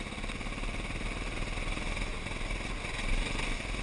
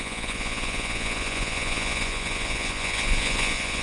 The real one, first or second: first